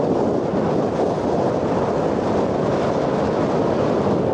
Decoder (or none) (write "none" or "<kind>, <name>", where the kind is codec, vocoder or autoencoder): none